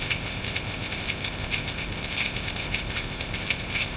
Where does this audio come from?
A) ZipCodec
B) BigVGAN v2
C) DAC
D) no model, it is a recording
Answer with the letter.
A